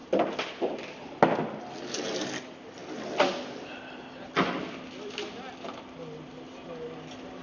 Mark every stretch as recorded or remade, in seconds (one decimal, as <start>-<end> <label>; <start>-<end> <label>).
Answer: 0.0-7.4 recorded